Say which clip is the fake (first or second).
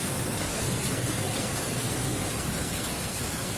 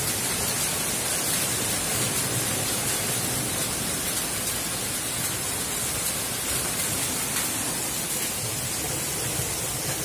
first